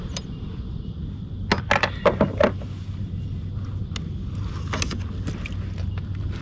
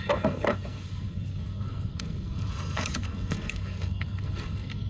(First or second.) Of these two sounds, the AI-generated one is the second